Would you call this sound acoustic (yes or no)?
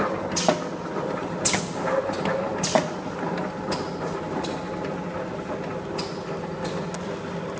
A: yes